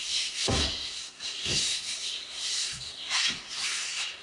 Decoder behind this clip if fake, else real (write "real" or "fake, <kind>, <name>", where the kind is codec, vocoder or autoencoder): fake, codec, SNAC